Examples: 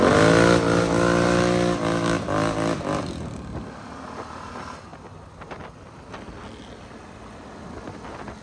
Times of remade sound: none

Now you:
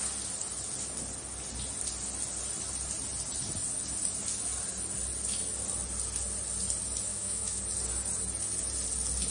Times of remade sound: 7.1-7.6 (autoencoder, DAC-VAE)

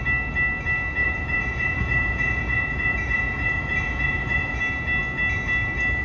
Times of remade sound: 1.0-4.6 (vocoder, Vocos)

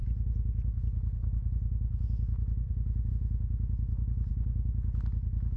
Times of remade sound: 3.1-4.3 (autoencoder, DAC-VAE)

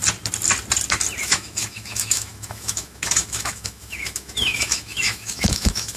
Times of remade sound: 1.2-6.0 (autoencoder, DAC-VAE)

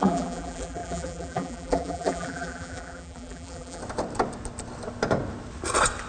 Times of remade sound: 0.0-3.8 (vocoder, BigVGAN v2)